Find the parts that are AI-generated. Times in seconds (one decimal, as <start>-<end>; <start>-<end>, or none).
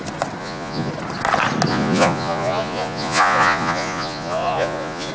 0.4-0.9; 1.7-5.1